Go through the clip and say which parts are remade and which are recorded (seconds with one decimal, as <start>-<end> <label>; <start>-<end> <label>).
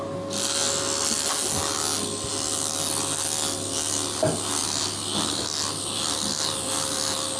0.0-7.4 recorded